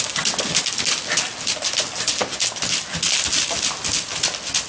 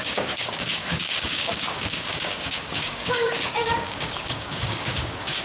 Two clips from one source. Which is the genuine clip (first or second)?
first